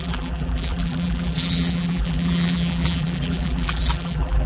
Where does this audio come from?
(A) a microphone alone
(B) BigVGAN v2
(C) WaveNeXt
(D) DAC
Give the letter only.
B